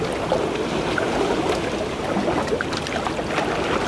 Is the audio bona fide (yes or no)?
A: yes